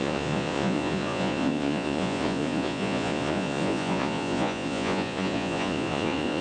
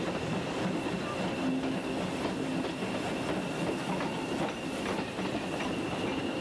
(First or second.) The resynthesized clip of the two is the first